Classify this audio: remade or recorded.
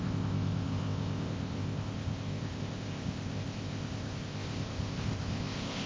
remade